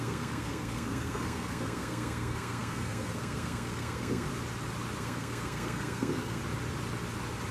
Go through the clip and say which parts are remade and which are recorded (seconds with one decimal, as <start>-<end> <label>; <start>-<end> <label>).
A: 0.0-4.3 remade; 4.3-5.0 recorded; 5.0-6.4 remade; 6.4-7.5 recorded